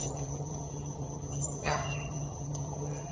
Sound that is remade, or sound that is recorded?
remade